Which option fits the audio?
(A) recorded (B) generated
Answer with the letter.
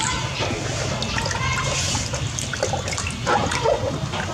A